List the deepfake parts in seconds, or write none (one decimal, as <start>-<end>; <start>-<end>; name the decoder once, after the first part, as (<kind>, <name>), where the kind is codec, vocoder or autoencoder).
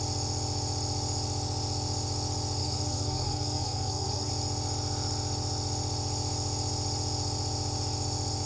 2.6-4.3 (codec, SNAC)